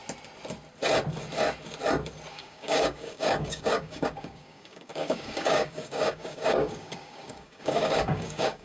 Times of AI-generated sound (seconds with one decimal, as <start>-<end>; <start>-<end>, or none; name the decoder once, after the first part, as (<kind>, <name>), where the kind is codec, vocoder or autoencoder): 2.3-8.6 (codec, DAC)

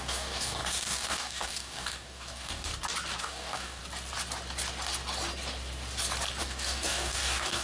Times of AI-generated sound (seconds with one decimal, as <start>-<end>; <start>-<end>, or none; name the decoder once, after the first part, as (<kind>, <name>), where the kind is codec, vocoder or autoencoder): 0.0-2.7 (codec, DAC); 3.2-3.8; 6.4-7.6